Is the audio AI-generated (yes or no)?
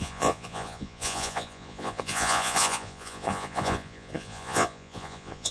yes